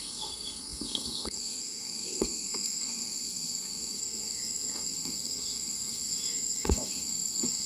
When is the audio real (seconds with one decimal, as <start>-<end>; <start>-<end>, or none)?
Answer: none